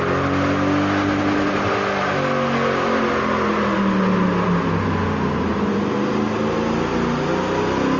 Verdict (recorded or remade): recorded